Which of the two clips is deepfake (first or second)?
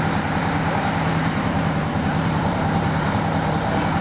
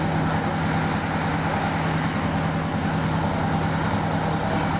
first